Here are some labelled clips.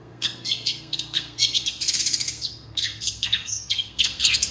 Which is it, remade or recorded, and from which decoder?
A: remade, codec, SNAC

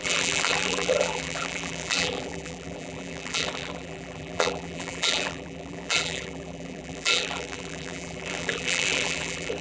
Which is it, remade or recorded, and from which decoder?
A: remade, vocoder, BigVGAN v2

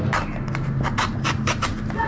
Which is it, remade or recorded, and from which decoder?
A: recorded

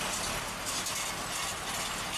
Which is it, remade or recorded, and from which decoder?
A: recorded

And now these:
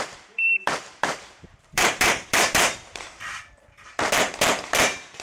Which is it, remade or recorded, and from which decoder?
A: remade, vocoder, BigVGAN v2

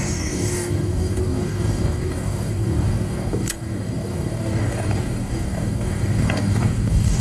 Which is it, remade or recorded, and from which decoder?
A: remade, codec, DAC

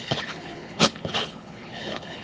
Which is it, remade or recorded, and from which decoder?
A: remade, codec, HILCodec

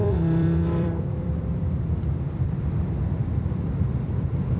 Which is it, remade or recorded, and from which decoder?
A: remade, vocoder, BigVGAN v2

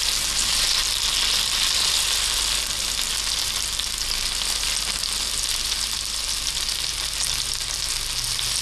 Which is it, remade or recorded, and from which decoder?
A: recorded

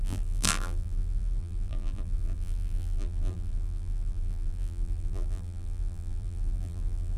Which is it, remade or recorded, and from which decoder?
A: remade, vocoder, BigVGAN v2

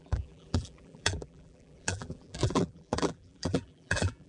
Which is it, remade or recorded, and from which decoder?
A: remade, vocoder, BigVGAN v2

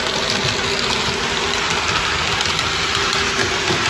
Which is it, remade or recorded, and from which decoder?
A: recorded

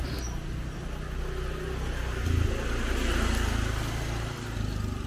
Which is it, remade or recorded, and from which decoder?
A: recorded